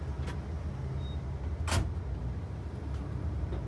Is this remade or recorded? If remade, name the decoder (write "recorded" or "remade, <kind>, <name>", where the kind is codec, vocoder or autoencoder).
recorded